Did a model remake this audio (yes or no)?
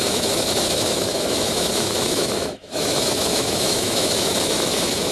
yes